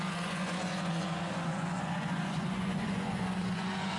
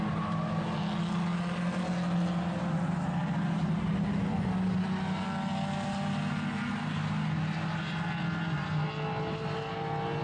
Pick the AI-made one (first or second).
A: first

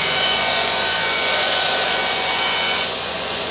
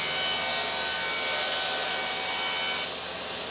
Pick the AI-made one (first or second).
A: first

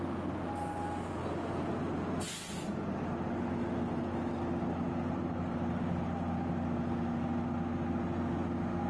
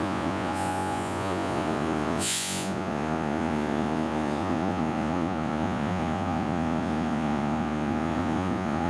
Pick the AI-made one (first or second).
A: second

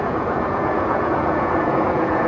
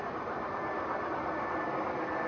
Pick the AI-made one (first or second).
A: first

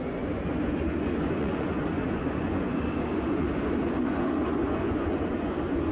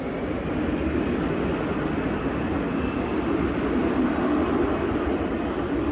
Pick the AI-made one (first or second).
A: first